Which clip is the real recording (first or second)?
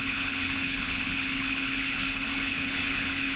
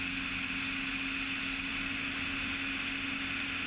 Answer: second